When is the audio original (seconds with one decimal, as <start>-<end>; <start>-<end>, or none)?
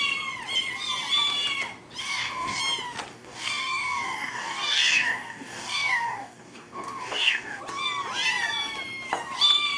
0.0-2.0; 2.6-3.1; 7.6-9.8